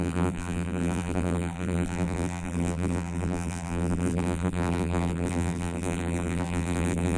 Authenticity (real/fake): fake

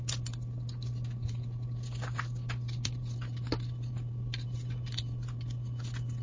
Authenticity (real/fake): real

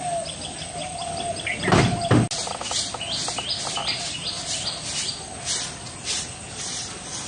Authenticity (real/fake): real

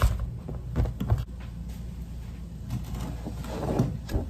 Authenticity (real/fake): real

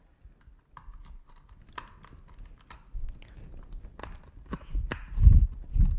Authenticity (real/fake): real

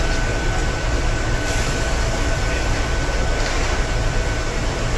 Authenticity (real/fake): real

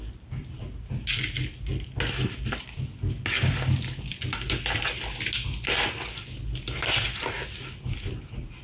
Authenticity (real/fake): real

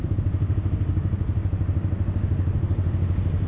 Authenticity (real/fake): real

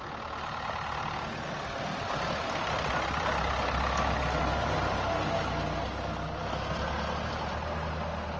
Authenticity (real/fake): real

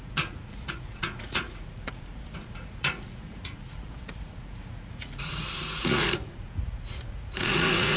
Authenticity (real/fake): fake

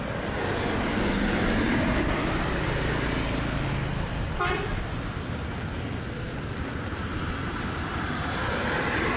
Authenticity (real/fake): real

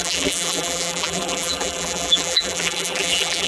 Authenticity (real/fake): fake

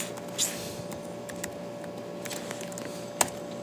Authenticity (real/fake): real